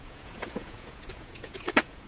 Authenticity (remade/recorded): remade